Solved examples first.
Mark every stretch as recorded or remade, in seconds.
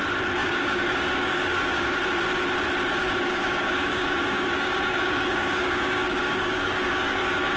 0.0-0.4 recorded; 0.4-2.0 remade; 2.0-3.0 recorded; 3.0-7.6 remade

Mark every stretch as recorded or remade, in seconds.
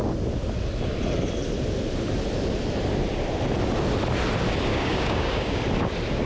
0.0-4.7 recorded; 4.7-5.6 remade; 5.6-6.3 recorded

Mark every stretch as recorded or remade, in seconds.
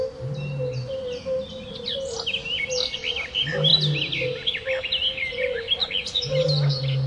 0.0-7.1 recorded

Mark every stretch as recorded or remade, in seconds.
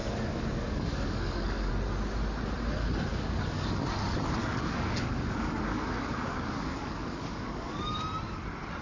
0.0-1.7 remade; 1.7-3.1 recorded; 3.1-3.8 remade; 3.8-4.4 recorded; 4.4-8.0 remade; 8.0-8.8 recorded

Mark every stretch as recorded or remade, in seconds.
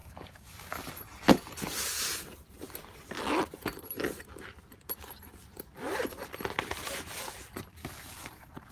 0.0-1.5 remade; 1.5-7.8 recorded; 7.8-8.7 remade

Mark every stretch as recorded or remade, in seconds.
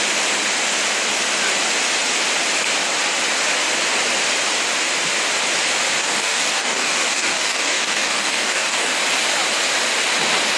0.0-6.0 recorded; 6.0-8.9 remade; 8.9-10.6 recorded